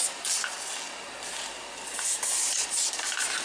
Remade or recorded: recorded